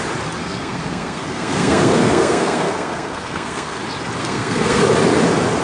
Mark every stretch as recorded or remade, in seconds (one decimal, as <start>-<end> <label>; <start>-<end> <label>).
0.0-0.4 recorded; 0.4-3.8 remade; 3.8-4.2 recorded; 4.2-4.8 remade; 4.8-5.6 recorded